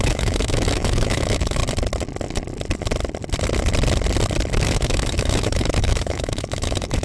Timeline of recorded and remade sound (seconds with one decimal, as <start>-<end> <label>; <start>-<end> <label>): 0.0-1.6 remade; 1.6-4.6 recorded; 4.6-7.0 remade